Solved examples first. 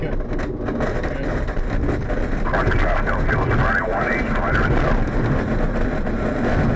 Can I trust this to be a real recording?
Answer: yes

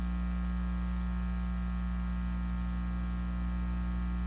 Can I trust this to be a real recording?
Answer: yes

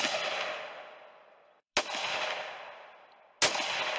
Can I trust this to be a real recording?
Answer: yes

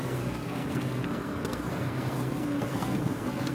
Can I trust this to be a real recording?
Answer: no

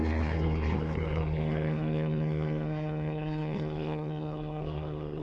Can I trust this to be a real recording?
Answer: no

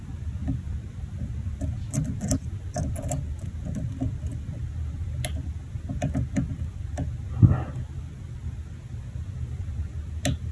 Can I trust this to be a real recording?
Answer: yes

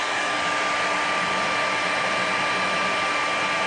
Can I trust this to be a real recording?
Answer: yes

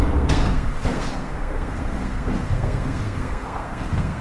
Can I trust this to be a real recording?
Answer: no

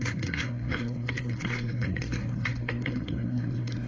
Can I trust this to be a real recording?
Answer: no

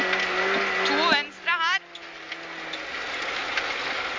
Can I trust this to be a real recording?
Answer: yes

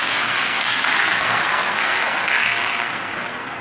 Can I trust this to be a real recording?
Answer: no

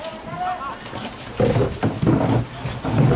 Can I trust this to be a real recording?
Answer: yes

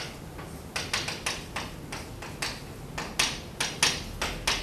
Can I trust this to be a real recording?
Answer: yes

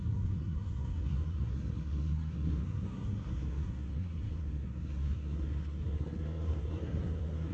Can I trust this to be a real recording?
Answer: no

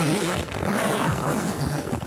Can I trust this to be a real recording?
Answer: no